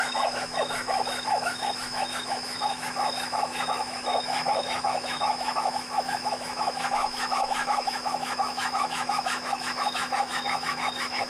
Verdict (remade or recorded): remade